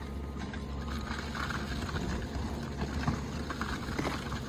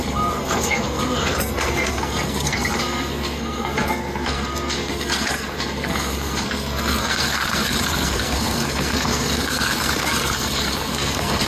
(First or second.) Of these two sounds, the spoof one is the second